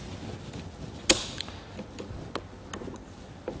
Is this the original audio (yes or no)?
yes